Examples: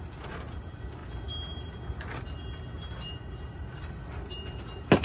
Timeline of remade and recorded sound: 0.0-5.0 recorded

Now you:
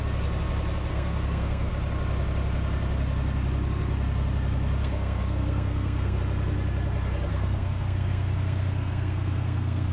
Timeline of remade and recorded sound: 0.0-0.9 recorded; 0.9-1.7 remade; 1.7-4.8 recorded; 4.8-6.2 remade; 6.2-7.3 recorded; 7.3-9.9 remade